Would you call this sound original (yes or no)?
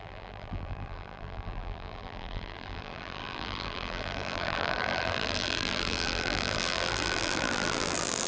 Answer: no